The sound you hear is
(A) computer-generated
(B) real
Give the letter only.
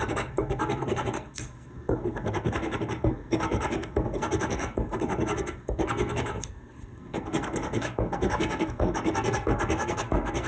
A